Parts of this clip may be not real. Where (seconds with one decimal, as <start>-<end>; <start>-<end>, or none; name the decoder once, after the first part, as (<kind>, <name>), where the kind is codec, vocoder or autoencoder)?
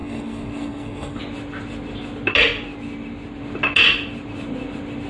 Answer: 0.0-1.2 (codec, SNAC)